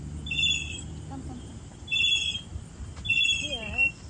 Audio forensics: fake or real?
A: real